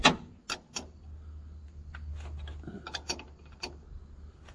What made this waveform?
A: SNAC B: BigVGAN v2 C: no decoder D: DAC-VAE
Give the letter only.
C